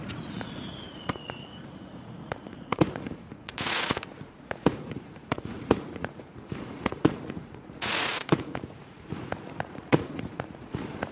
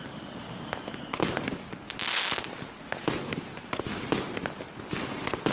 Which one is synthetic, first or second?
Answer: first